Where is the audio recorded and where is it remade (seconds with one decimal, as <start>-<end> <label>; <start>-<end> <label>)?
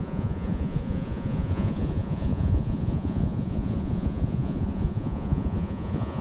0.0-6.2 remade